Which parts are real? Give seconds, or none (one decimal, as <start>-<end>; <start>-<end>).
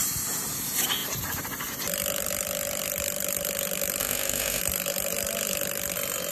0.0-4.0; 4.6-6.3